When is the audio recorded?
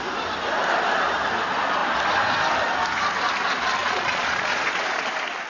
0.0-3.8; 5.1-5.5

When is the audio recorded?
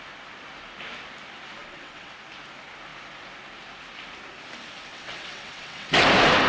0.0-1.6; 2.1-4.9; 5.9-6.5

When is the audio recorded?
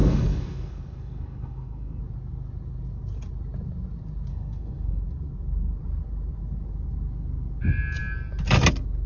2.0-4.3; 5.0-9.1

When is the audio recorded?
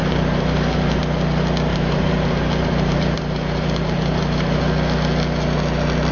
1.0-1.7; 4.6-6.1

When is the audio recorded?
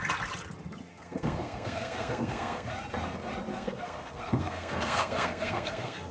0.0-0.9; 2.7-3.5